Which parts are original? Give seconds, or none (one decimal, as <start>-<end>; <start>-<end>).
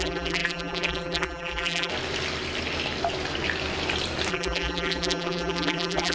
1.9-4.3